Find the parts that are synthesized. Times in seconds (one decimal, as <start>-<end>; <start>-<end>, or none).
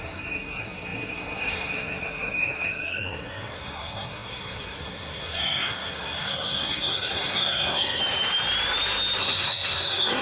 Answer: 0.0-8.0; 9.2-10.2